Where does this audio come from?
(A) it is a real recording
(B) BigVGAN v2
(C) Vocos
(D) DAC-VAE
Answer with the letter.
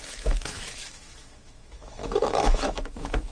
D